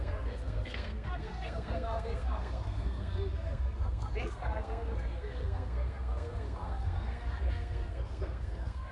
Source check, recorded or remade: remade